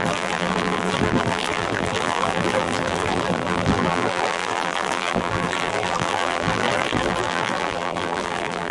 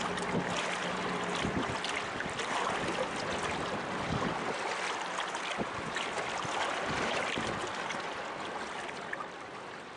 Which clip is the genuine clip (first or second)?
second